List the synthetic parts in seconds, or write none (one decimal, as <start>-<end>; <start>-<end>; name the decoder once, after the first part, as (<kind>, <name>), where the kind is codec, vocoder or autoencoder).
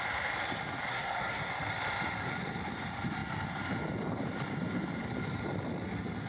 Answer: 0.9-1.5 (codec, SNAC)